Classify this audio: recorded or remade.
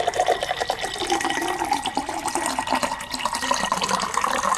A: recorded